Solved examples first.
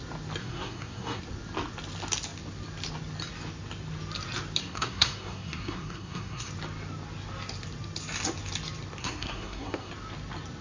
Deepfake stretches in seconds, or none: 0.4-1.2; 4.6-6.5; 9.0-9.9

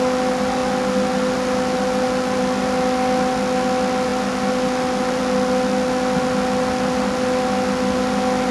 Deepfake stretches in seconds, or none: none

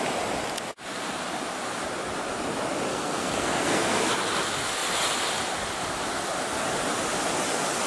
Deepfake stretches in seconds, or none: 2.9-4.1

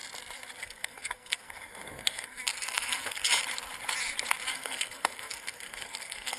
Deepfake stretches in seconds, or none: 0.6-3.3; 4.5-6.4

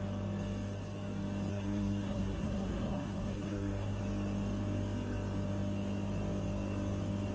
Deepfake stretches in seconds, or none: 1.5-4.0